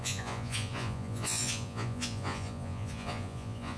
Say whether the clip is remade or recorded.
remade